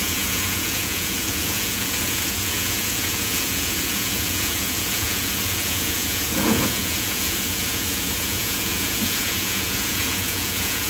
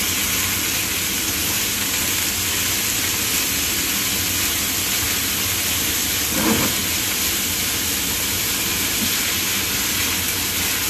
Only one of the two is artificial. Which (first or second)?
first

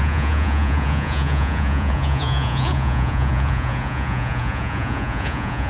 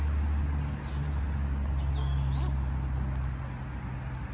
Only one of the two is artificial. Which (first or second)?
first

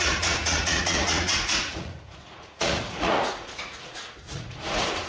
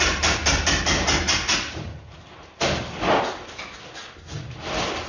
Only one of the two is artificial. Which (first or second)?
first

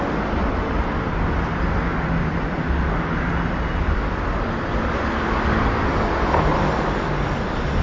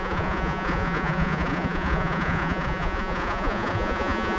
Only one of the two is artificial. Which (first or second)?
second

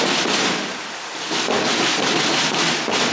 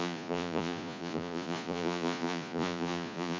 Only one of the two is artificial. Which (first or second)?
second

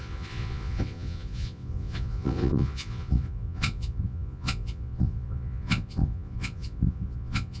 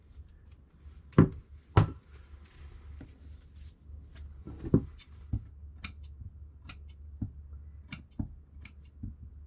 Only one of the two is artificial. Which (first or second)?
first